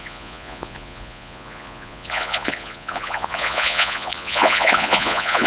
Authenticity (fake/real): fake